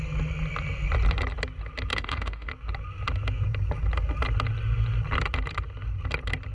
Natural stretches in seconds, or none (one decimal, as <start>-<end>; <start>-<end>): 0.0-1.9; 2.5-6.5